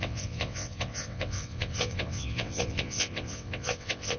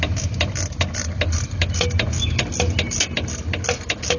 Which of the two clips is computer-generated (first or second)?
first